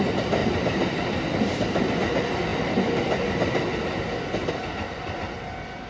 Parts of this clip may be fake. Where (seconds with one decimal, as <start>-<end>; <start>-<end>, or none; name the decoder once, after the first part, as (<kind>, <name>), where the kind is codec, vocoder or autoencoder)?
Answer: 0.4-1.8 (vocoder, BigVGAN v2); 2.5-4.5